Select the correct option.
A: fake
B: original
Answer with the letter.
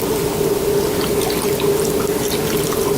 B